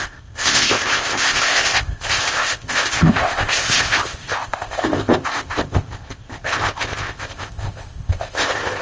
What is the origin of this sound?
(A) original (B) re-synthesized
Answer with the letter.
B